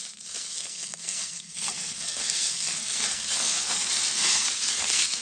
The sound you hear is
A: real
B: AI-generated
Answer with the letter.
B